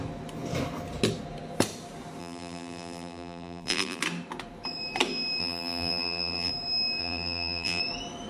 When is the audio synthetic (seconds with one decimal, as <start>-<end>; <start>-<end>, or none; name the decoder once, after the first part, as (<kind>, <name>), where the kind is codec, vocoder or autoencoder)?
2.2-4.0 (vocoder, BigVGAN v2); 5.4-6.5; 7.0-7.8